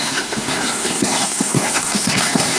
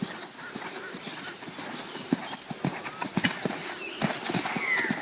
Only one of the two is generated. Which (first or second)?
first